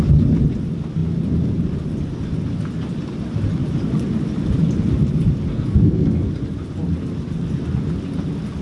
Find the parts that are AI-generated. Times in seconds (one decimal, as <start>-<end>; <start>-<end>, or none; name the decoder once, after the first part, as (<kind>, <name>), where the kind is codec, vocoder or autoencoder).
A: 5.5-6.3 (codec, SNAC)